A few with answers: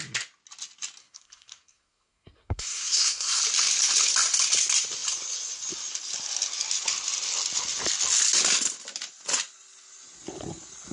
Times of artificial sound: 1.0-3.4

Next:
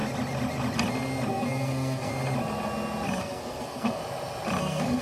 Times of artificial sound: 1.3-2.1; 3.2-4.0; 4.6-5.0